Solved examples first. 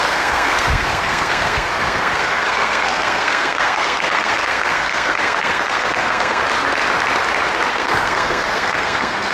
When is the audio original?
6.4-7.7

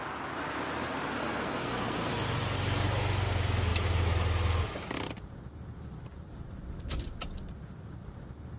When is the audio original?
0.0-1.2; 2.1-8.6

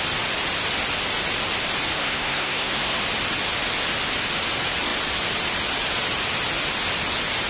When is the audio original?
0.0-2.0; 3.0-7.5

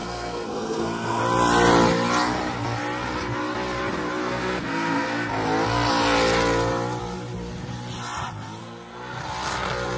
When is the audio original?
1.2-4.2; 5.3-8.6; 9.2-10.0

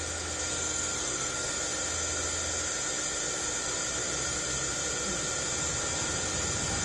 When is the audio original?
0.0-0.5; 1.5-6.8

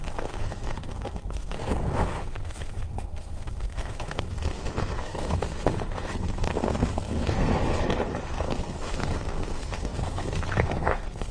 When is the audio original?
7.5-8.2